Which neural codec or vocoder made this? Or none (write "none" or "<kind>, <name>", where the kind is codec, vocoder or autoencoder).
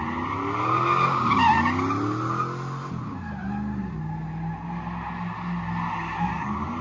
none